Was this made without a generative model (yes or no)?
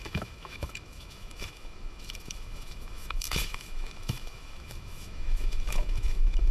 no